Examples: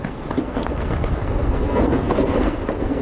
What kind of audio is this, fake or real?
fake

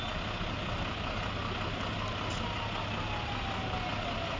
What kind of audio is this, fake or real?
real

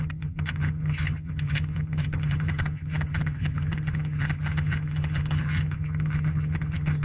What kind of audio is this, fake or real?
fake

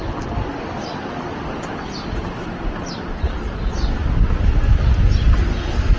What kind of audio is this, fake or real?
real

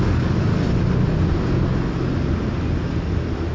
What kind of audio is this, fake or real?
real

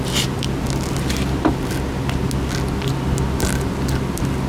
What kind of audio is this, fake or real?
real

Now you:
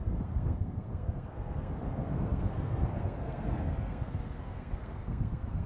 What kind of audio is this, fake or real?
fake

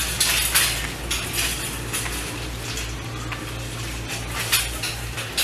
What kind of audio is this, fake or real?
real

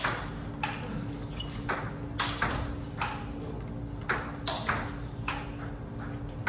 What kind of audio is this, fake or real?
real